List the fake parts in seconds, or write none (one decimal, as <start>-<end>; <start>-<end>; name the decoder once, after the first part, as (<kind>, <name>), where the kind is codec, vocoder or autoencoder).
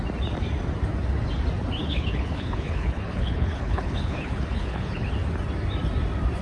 1.8-5.1 (codec, HILCodec)